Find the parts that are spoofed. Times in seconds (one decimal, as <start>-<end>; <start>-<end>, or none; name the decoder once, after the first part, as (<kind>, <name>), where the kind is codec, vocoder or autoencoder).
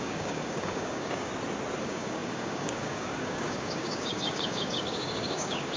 0.0-1.3 (codec, DAC); 1.8-5.8